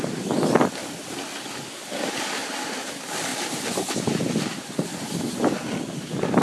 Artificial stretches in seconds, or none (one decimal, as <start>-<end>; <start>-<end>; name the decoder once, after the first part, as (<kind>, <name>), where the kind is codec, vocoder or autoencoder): none